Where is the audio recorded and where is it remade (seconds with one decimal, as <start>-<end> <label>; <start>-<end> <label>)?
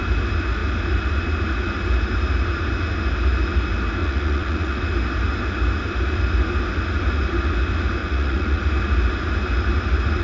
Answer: 0.0-4.0 recorded; 4.0-4.8 remade; 4.8-8.0 recorded; 8.0-8.6 remade; 8.6-10.2 recorded